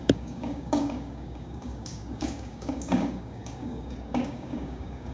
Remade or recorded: remade